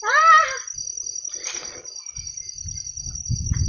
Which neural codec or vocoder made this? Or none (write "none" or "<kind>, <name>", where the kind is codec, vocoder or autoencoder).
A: none